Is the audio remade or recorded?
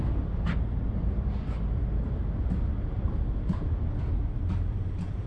recorded